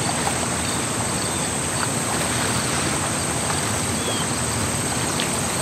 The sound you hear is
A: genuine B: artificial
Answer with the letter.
A